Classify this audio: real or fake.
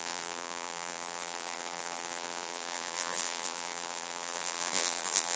fake